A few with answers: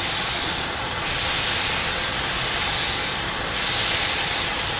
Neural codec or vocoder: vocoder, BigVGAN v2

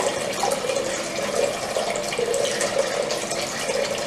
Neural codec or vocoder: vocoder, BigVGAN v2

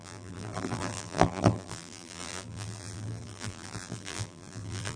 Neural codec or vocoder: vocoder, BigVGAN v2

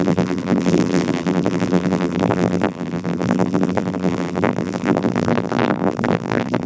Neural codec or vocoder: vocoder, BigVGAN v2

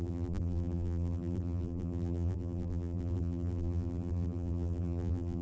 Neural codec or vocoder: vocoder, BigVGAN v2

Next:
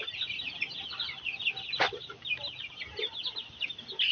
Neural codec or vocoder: none